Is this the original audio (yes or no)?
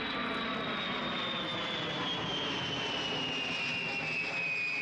yes